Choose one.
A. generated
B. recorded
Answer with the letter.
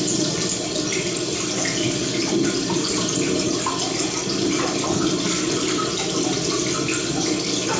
B